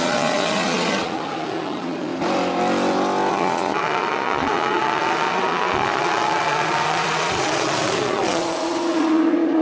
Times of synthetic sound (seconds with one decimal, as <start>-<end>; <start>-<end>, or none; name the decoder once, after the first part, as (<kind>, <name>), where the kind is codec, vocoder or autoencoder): 0.0-2.1 (vocoder, Vocos); 3.3-9.6